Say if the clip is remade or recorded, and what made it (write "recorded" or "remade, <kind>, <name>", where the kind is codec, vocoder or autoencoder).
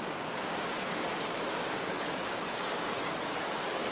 remade, codec, DAC